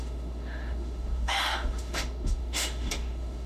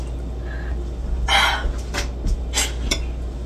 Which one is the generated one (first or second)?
first